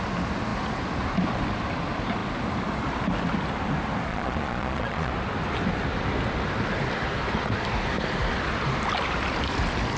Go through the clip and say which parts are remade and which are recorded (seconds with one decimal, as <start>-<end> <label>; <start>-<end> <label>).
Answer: 0.0-4.1 recorded; 4.1-5.1 remade; 5.1-10.0 recorded